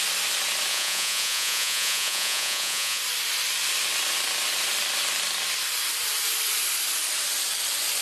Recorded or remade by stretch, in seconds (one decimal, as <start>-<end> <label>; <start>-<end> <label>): 0.0-0.7 recorded; 0.7-3.0 remade; 3.0-8.0 recorded